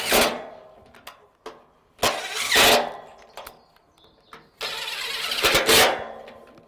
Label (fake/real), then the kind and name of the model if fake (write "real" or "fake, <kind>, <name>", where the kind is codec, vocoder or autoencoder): real